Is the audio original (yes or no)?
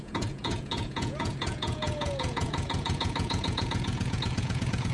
no